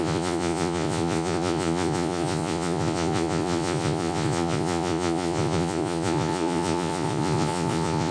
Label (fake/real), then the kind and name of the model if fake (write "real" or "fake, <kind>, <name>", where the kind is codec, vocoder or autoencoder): fake, vocoder, Vocos